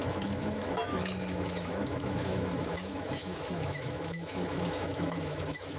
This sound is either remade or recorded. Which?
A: remade